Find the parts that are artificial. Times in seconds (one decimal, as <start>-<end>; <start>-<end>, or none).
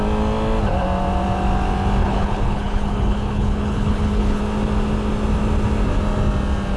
2.0-4.4